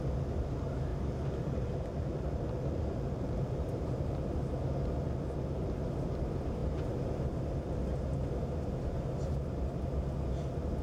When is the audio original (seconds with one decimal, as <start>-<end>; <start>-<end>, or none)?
0.0-0.9; 4.1-6.6; 7.4-10.8